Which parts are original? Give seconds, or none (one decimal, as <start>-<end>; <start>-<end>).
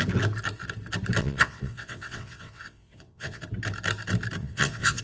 0.0-1.2; 3.4-4.4